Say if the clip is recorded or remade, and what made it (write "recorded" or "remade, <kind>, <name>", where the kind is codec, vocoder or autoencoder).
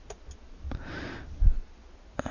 recorded